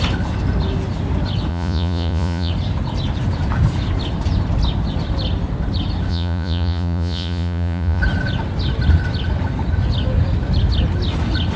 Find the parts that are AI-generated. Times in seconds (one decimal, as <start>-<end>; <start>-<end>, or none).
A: 1.5-2.5; 6.1-8.0